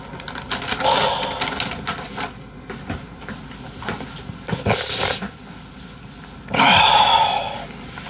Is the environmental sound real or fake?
real